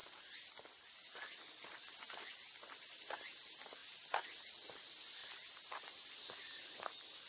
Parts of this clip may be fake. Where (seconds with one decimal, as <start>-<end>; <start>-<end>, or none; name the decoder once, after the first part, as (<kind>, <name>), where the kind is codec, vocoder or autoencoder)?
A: 0.0-0.5 (vocoder, BigVGAN v2); 3.8-4.5; 5.2-6.1